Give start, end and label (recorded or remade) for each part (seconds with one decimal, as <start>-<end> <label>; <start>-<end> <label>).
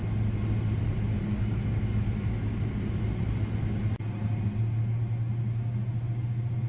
0.0-6.7 recorded